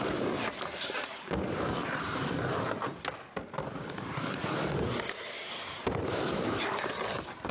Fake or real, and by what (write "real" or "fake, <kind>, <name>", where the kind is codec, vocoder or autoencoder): real